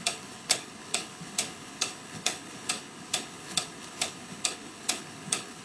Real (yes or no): no